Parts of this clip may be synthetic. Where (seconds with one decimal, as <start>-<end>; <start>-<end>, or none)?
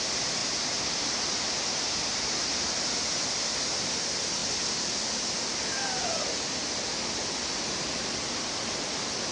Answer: none